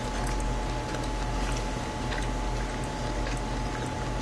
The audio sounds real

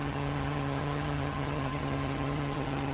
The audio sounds fake